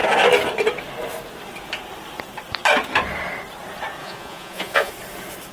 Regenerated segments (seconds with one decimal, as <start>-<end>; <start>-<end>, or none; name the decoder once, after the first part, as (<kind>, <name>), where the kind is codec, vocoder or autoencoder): 4.0-4.9 (vocoder, Vocos)